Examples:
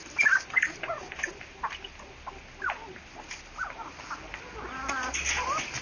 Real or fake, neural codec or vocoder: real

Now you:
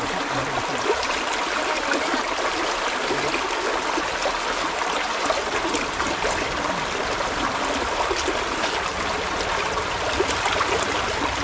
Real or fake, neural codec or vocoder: real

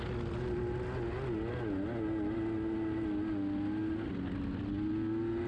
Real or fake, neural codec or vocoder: real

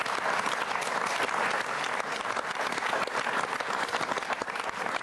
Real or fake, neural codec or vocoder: real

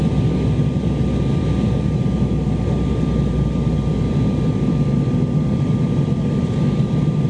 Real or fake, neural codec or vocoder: real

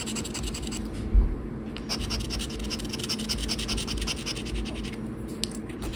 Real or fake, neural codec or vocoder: real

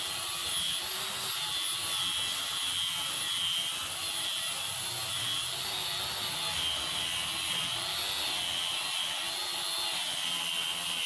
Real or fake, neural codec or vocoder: real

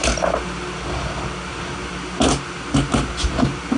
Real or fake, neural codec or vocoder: real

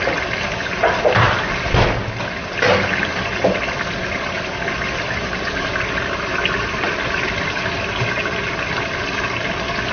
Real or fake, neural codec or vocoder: real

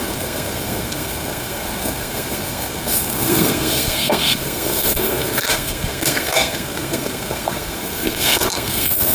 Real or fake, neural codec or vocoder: fake, codec, SNAC